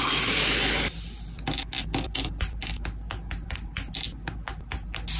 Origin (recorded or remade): recorded